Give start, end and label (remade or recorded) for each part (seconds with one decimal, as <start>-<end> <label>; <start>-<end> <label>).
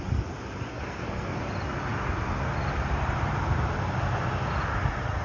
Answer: 0.0-0.7 recorded; 0.7-1.4 remade; 1.4-5.2 recorded